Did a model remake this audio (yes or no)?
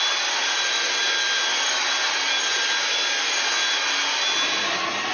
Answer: no